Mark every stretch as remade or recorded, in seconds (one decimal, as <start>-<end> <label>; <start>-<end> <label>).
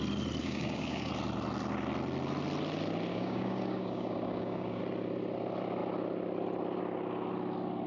0.0-0.4 recorded; 0.4-1.1 remade; 1.1-3.1 recorded; 3.1-4.8 remade; 4.8-7.9 recorded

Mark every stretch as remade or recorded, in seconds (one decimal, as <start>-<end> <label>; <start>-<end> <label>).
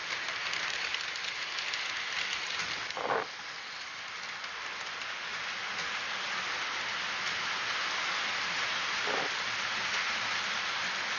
0.0-11.2 recorded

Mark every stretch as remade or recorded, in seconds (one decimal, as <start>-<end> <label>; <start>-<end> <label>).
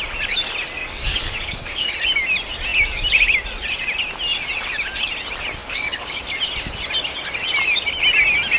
0.0-0.8 recorded; 0.8-1.9 remade; 1.9-5.6 recorded; 5.6-6.2 remade; 6.2-8.6 recorded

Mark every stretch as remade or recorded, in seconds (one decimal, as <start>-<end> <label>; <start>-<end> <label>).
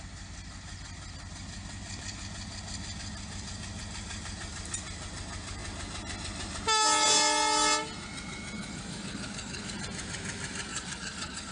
0.0-8.6 recorded; 8.6-9.7 remade; 9.7-10.7 recorded; 10.7-11.5 remade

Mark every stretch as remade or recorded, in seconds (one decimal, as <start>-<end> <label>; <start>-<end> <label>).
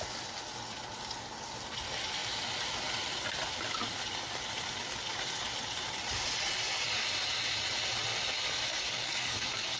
0.0-8.7 recorded; 8.7-9.8 remade